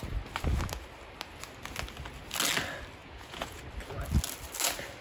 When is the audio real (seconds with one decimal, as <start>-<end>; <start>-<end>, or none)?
0.0-3.0; 3.6-5.0